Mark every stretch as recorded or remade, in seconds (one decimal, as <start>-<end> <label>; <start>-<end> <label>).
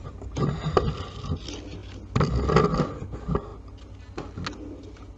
0.0-5.2 recorded